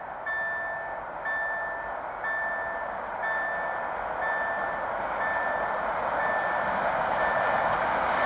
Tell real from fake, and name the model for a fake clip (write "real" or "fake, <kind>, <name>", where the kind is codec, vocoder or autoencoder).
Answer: real